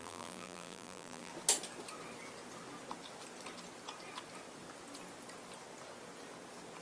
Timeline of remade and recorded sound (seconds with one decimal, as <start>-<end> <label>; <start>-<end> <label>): 0.0-1.3 remade; 1.3-6.8 recorded